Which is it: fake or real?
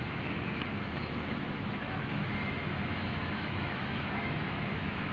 fake